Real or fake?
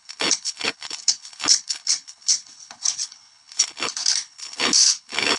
fake